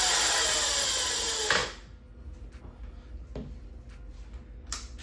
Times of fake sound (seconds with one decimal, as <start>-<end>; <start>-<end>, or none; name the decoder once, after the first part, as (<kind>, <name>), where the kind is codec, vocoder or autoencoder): none